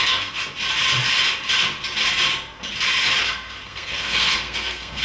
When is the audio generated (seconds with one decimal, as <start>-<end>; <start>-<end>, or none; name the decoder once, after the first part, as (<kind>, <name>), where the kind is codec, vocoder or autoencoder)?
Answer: 0.0-0.4 (codec, SNAC); 3.2-5.0